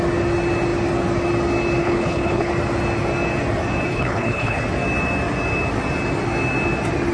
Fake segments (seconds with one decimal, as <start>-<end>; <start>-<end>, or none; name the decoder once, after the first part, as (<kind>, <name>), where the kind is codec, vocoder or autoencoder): 1.8-2.5 (codec, HILCodec); 3.9-4.6